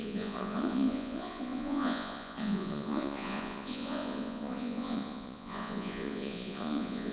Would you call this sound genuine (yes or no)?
no